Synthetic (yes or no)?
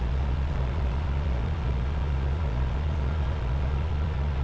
yes